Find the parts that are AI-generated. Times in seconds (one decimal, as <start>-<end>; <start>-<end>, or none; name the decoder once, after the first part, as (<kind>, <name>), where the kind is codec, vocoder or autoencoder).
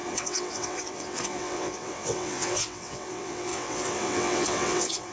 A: 0.0-5.1 (vocoder, WaveNeXt)